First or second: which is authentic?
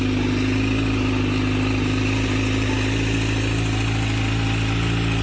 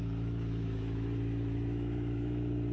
first